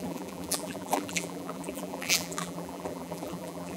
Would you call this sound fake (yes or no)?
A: yes